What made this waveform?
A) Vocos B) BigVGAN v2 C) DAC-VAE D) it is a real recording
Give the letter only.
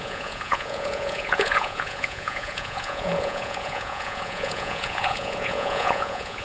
A